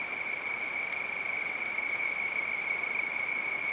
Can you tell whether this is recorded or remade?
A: recorded